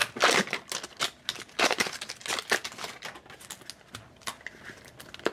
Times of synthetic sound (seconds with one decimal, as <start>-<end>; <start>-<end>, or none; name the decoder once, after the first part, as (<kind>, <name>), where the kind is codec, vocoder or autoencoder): none

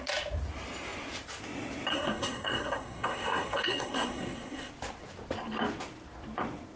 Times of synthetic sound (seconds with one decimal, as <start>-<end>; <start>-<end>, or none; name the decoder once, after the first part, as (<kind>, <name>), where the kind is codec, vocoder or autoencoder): 1.9-4.7 (codec, SNAC)

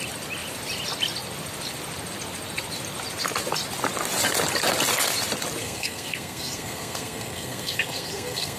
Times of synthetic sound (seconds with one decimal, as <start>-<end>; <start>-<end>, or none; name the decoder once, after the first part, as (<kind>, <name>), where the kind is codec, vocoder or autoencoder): 5.6-8.6 (codec, SNAC)

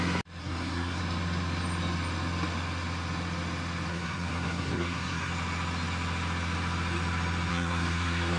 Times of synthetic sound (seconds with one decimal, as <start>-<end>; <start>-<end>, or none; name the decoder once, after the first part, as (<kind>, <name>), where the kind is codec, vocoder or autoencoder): 0.4-1.0 (codec, SNAC); 3.9-5.3; 7.5-8.4

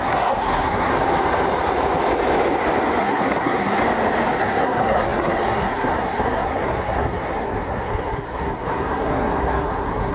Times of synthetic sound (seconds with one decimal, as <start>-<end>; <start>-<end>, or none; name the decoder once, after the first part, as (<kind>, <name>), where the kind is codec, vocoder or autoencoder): 0.0-0.9 (codec, SNAC); 3.0-3.8; 4.4-10.1

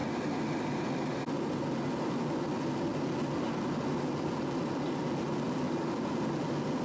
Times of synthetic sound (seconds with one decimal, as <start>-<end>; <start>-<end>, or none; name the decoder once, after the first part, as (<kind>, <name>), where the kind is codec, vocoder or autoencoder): none

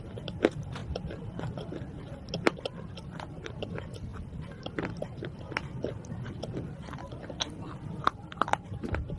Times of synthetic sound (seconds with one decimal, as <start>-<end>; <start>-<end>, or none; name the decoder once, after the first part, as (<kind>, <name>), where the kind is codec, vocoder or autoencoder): none